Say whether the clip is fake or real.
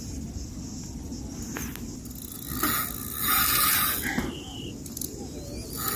real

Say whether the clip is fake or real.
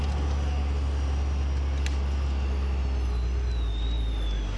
real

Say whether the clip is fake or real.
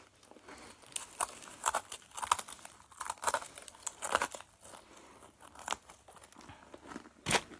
real